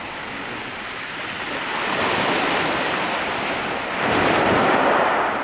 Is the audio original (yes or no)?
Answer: yes